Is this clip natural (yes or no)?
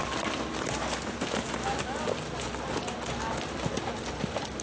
yes